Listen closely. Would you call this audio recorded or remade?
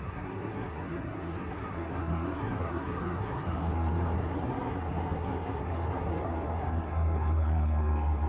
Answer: remade